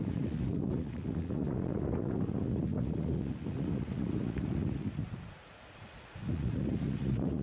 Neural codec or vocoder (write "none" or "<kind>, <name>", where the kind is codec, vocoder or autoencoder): vocoder, Vocos